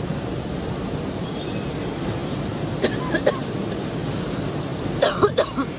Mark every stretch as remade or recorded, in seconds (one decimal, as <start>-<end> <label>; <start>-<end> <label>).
0.0-5.8 recorded